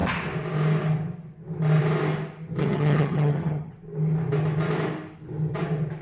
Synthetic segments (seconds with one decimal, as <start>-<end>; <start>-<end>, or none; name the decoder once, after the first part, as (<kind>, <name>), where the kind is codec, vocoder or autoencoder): 2.6-3.7 (vocoder, HiFi-GAN)